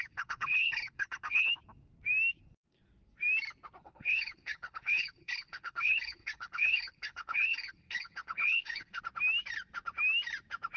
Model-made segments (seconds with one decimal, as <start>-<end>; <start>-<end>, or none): 0.0-1.5; 3.8-9.0